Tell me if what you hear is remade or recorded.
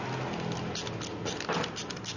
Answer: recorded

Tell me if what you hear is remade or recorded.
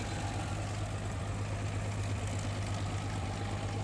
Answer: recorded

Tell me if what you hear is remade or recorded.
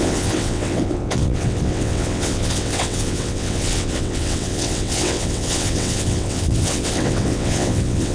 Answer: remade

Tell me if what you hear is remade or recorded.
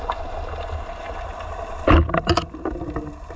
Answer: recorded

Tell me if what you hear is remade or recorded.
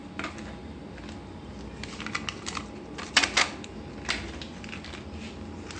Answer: recorded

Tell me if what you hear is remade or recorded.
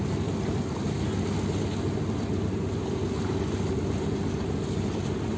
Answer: recorded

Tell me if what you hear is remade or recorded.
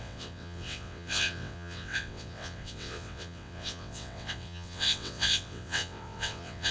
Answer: remade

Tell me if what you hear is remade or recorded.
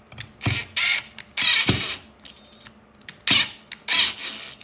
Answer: recorded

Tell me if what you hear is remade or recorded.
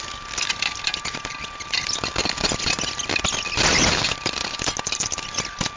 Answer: recorded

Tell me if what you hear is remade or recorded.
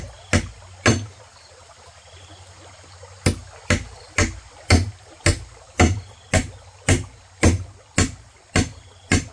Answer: recorded